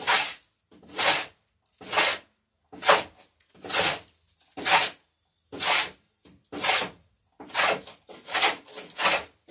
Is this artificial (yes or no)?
no